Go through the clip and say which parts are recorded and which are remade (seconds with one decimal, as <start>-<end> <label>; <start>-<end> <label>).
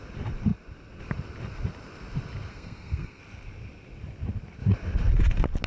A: 0.0-2.5 recorded; 2.5-3.2 remade; 3.2-5.7 recorded